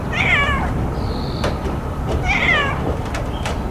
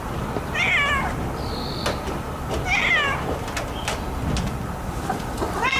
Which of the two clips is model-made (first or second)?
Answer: first